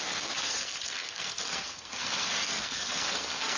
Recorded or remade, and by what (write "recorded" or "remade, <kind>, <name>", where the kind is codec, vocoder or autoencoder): remade, codec, SNAC